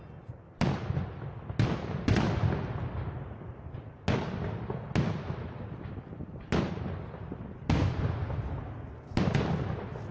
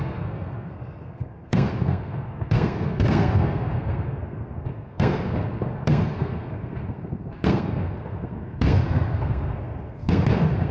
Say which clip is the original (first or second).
first